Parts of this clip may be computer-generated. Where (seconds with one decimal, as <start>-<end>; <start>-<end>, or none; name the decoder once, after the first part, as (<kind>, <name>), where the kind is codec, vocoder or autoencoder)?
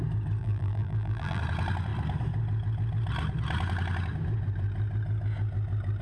0.4-1.4 (vocoder, BigVGAN v2)